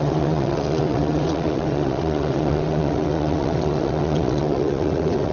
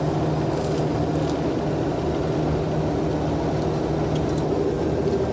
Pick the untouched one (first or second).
second